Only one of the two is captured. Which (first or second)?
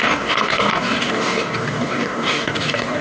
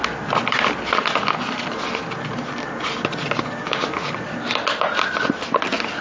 second